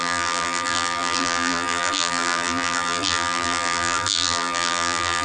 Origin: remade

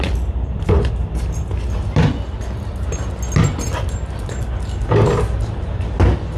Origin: recorded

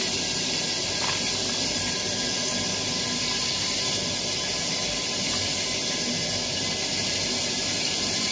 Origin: recorded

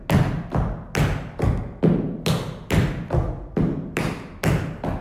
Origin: recorded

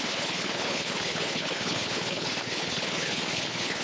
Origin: remade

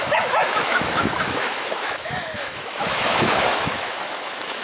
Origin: remade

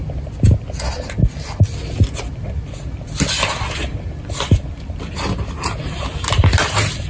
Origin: recorded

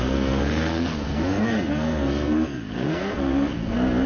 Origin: remade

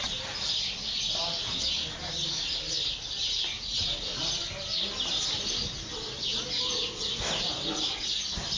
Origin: recorded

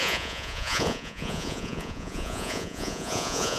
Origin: remade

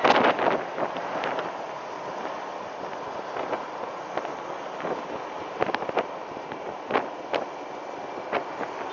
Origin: recorded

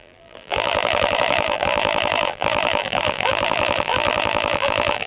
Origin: remade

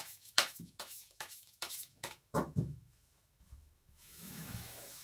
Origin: remade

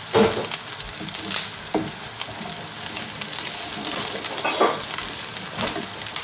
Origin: recorded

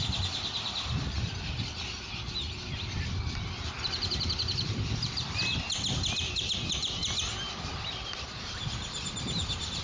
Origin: remade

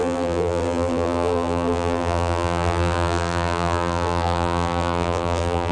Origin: remade